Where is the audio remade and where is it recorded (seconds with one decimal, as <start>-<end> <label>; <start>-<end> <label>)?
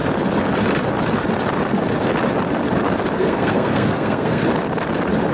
0.0-3.2 recorded; 3.2-4.4 remade; 4.4-5.3 recorded